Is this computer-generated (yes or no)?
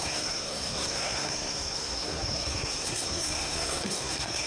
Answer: yes